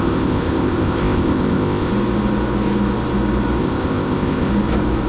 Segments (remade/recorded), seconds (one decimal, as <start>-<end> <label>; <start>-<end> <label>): 0.0-1.9 remade; 1.9-3.6 recorded; 3.6-4.5 remade; 4.5-5.1 recorded